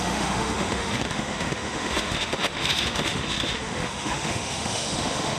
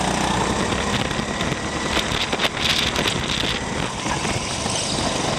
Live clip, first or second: second